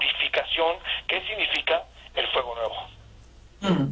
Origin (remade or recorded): recorded